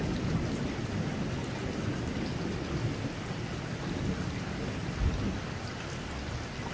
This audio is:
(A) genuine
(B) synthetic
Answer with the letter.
A